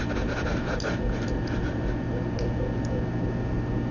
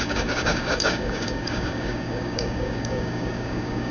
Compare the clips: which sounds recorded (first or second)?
first